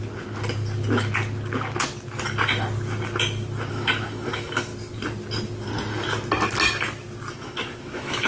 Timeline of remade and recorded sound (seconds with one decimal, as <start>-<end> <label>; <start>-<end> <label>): 0.0-3.7 recorded; 3.7-4.7 remade; 4.7-7.3 recorded; 7.3-8.3 remade